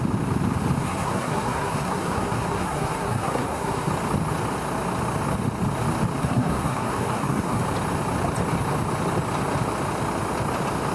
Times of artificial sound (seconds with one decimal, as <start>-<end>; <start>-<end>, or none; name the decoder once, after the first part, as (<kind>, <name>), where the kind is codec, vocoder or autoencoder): 0.8-3.9 (codec, SNAC); 6.2-7.6